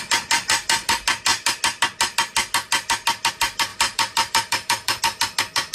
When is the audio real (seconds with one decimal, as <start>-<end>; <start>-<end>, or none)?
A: 0.0-3.7; 5.0-5.7